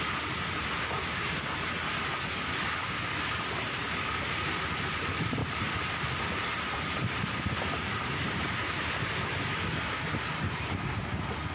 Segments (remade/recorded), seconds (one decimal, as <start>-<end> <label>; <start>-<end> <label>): 0.0-5.4 recorded; 5.4-8.9 remade; 8.9-11.5 recorded